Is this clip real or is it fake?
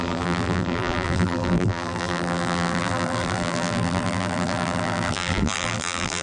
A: fake